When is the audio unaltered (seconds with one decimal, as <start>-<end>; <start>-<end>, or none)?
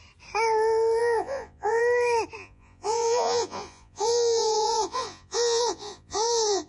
0.0-1.0; 1.8-2.4